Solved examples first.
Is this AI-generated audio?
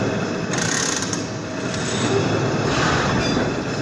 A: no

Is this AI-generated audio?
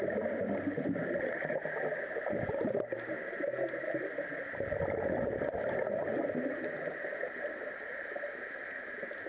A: no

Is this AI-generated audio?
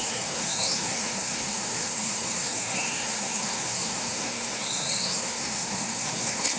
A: yes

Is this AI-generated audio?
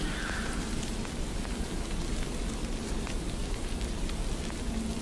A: no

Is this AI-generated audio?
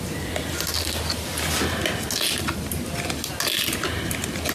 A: no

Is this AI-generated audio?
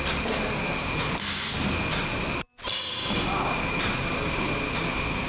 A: no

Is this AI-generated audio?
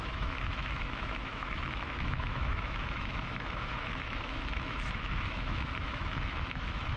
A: yes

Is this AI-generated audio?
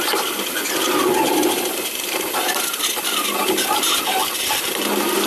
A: no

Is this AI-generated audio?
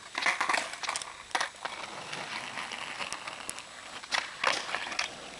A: no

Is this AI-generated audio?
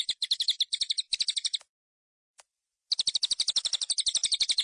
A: no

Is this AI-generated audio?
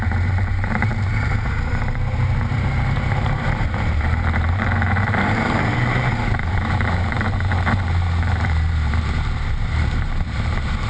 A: yes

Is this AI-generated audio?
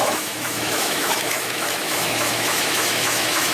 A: yes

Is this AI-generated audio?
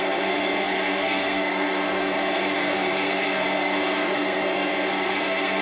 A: yes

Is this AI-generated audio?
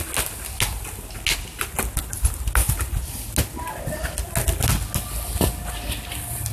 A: no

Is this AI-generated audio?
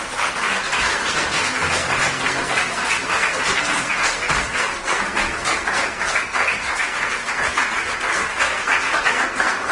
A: yes